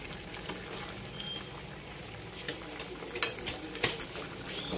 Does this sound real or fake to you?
real